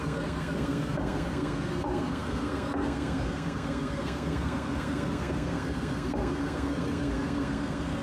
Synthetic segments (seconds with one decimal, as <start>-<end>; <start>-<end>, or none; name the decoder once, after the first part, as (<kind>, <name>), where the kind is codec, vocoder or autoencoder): 0.0-8.0 (codec, SNAC)